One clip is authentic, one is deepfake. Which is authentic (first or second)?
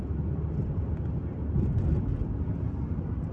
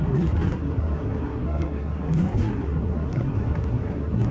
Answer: first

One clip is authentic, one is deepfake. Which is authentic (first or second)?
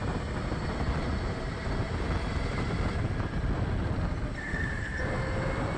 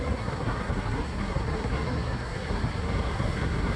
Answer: first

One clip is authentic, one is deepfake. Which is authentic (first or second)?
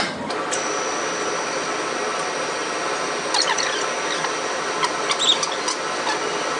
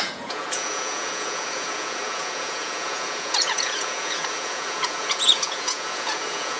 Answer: first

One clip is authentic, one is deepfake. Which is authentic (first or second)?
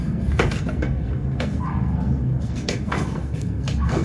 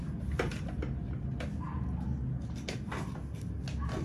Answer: second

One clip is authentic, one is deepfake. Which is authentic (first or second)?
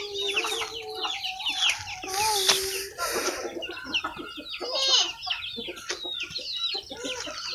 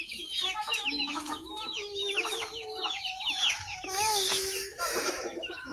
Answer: first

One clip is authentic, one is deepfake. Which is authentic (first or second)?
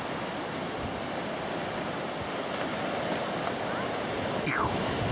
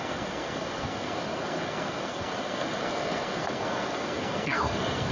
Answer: first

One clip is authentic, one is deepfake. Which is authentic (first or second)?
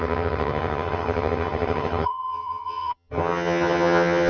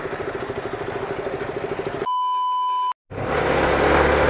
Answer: second